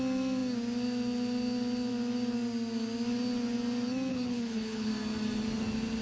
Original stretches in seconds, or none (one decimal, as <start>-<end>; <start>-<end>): 0.0-4.1; 4.9-6.0